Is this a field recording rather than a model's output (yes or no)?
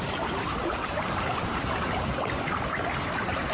yes